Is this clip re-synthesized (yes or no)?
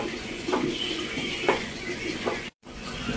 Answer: yes